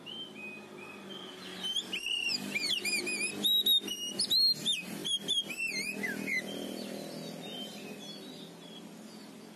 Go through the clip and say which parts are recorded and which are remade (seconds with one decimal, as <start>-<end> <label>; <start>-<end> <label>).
0.0-9.6 recorded